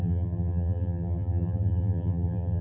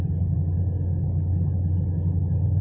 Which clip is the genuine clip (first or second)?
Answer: second